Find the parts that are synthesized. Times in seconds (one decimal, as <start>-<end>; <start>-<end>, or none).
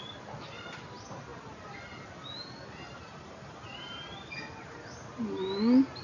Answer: none